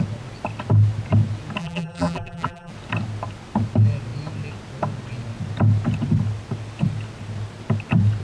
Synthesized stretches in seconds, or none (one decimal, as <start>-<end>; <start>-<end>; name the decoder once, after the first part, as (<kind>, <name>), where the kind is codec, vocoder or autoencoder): 1.6-2.7 (vocoder, BigVGAN v2)